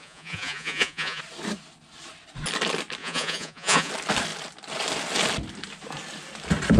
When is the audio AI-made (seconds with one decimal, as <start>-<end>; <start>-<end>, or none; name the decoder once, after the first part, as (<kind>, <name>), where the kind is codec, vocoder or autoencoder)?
0.0-1.2 (vocoder, Vocos); 3.0-3.9